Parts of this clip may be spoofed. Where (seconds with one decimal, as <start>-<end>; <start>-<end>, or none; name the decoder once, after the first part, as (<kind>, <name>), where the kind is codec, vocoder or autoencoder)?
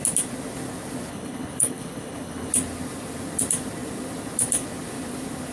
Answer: 1.1-2.5 (codec, HILCodec)